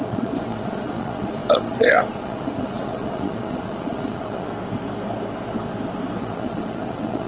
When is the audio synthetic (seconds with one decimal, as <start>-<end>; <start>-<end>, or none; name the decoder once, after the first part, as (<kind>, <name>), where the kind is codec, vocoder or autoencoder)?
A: 0.0-4.5 (vocoder, Vocos); 6.2-7.3